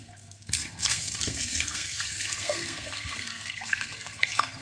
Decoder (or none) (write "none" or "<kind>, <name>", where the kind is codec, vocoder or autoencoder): codec, SNAC